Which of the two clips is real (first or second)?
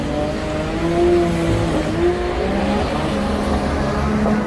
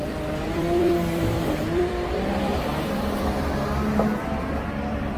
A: first